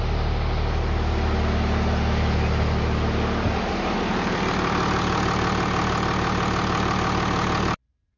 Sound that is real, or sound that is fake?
real